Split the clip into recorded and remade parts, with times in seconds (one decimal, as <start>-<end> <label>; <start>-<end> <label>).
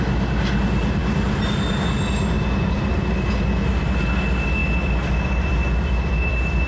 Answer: 0.0-6.7 recorded